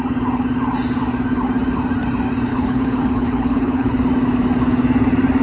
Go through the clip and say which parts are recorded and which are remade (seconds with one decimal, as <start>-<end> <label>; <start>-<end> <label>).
0.0-2.5 recorded; 2.5-3.9 remade; 3.9-5.4 recorded